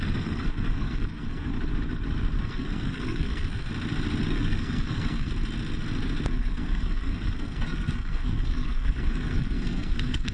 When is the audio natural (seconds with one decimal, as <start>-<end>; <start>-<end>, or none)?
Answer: 1.5-2.4; 3.7-4.2; 5.3-6.3